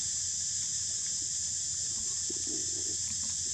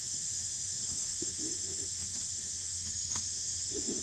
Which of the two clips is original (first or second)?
first